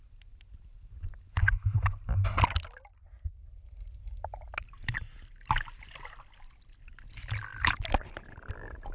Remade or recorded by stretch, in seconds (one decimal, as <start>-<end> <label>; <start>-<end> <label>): 0.0-8.9 recorded